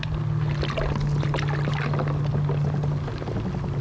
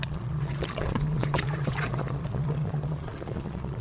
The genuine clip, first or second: first